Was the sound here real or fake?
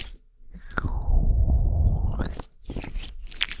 real